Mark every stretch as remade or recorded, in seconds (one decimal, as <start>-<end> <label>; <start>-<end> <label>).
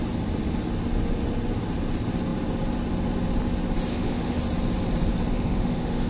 0.0-3.9 recorded; 3.9-4.4 remade; 4.4-5.3 recorded; 5.3-6.1 remade